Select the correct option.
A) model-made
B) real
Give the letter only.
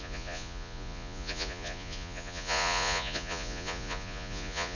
A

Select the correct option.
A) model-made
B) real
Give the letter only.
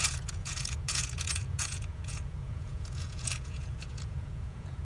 A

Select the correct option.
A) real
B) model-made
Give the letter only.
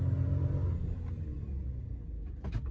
A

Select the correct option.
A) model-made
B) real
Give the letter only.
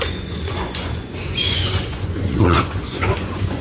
A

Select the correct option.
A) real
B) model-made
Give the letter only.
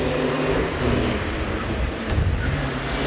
A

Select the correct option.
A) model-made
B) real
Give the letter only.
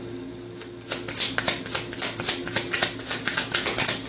B